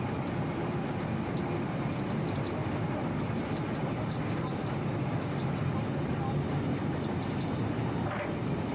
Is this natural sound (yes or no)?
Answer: yes